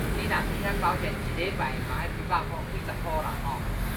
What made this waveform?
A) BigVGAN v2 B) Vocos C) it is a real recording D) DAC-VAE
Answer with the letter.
C